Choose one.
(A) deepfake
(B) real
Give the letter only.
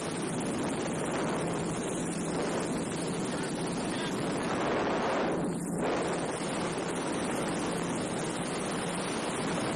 B